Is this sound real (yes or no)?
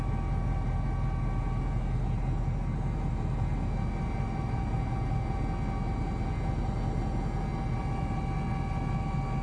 yes